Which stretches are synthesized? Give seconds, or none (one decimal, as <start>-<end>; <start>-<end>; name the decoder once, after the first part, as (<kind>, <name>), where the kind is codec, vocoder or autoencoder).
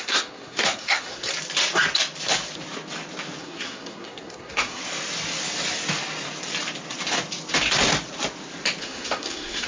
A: 0.0-1.3 (codec, SNAC); 3.4-4.8; 8.8-9.7